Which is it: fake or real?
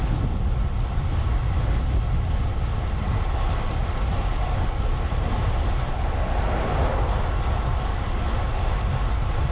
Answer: real